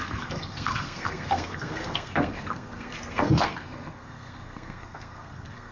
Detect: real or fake fake